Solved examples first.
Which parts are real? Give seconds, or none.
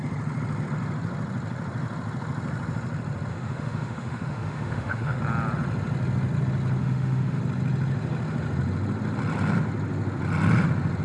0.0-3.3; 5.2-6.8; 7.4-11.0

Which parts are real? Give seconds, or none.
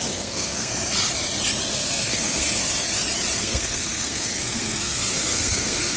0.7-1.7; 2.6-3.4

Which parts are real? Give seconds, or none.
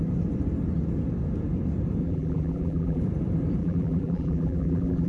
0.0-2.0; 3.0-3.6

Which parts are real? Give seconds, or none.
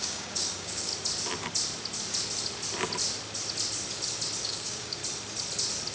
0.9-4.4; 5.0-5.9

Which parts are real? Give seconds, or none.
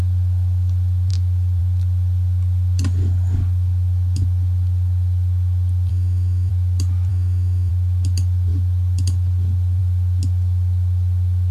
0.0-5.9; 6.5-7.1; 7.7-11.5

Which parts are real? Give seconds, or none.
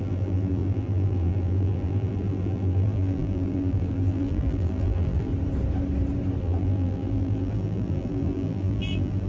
5.3-6.4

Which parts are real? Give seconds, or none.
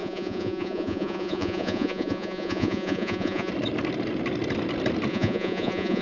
3.5-5.1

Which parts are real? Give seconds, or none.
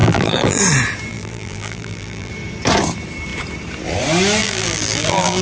0.6-1.1; 2.3-4.4